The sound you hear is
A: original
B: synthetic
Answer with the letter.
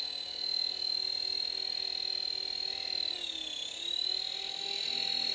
A